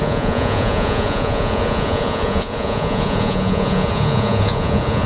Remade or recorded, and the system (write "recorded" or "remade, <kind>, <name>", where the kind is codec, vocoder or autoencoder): remade, vocoder, Vocos